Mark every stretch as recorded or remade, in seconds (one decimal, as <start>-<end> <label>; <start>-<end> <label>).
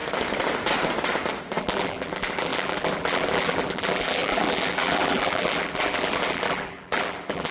0.0-1.6 recorded; 1.6-7.5 remade